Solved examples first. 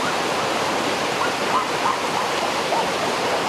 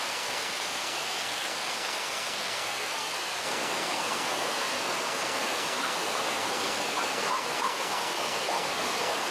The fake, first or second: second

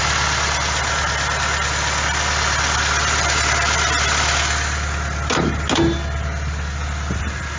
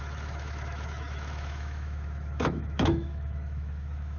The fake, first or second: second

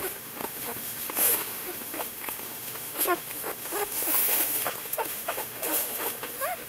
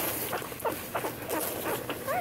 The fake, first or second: first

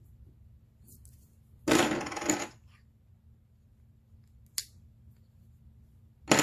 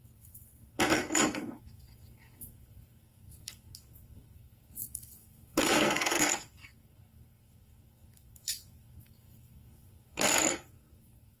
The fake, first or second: second